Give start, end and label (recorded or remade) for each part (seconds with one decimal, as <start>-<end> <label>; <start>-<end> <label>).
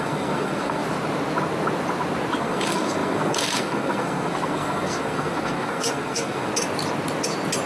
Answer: 0.0-0.8 remade; 0.8-2.4 recorded; 2.4-6.5 remade; 6.5-7.7 recorded